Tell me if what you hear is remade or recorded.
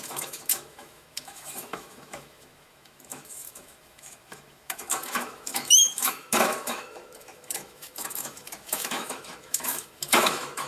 remade